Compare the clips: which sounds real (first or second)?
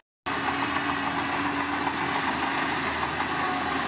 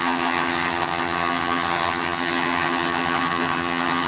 first